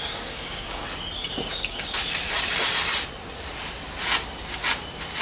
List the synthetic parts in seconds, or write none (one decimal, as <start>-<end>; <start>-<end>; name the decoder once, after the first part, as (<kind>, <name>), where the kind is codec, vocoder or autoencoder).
0.0-0.8 (codec, DAC); 1.5-2.0